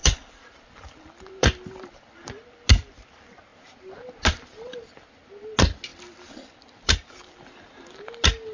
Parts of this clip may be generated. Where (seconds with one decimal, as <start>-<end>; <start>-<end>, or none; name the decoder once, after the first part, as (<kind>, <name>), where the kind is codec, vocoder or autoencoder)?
0.0-2.3 (vocoder, BigVGAN v2); 5.9-7.4